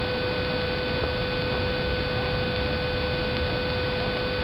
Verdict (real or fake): real